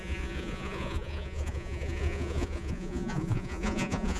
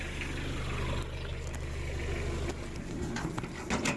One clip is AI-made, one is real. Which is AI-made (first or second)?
first